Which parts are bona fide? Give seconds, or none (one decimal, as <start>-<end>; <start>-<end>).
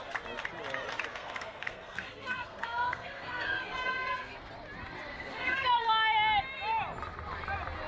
0.0-1.1; 4.5-5.1; 5.7-7.9